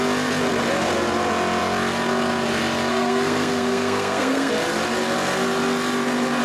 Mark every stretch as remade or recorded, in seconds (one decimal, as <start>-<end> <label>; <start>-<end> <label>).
0.0-2.9 recorded; 2.9-4.5 remade; 4.5-6.4 recorded